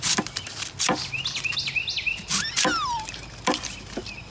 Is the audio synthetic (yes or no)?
no